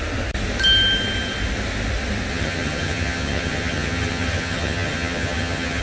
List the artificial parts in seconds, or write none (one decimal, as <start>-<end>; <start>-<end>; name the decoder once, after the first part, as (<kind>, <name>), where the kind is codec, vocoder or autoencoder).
2.3-5.8 (vocoder, HiFi-GAN)